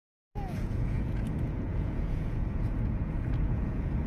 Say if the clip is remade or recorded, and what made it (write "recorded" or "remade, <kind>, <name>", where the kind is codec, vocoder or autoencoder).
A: remade, vocoder, Vocos